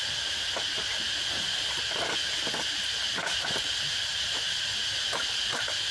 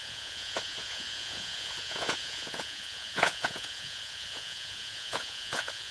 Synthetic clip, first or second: second